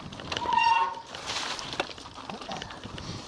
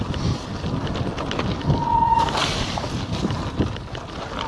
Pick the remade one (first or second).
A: first